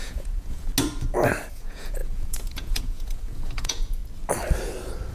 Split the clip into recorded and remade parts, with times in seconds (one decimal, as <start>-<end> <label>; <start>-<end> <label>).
0.0-0.7 remade; 0.7-1.5 recorded; 1.5-4.0 remade; 4.0-5.1 recorded